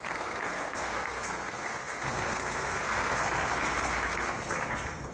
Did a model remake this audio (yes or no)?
yes